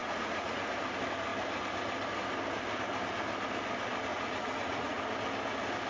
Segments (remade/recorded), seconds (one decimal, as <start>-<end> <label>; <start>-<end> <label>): 0.0-0.7 remade; 0.7-4.1 recorded; 4.1-5.0 remade; 5.0-5.9 recorded